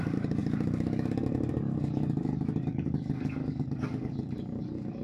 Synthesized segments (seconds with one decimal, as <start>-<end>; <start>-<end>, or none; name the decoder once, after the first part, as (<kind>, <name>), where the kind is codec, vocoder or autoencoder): 0.0-5.0 (codec, DAC)